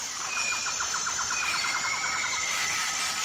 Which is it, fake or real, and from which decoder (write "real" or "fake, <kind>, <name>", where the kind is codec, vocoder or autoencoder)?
fake, vocoder, BigVGAN v2